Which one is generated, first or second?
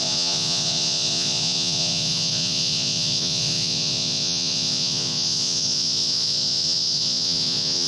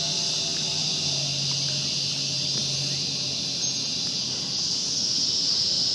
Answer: first